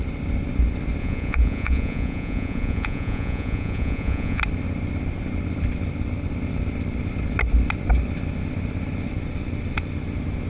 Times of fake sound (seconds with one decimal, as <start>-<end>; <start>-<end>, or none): 1.0-4.4